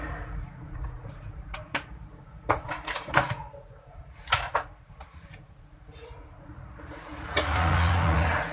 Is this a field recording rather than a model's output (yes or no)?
no